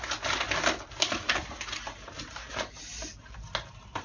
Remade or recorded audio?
recorded